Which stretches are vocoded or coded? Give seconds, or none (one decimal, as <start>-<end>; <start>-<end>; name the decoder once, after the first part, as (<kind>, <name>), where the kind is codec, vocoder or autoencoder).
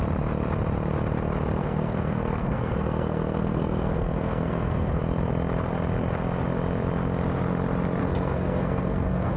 1.6-5.0 (codec, SNAC); 8.0-9.4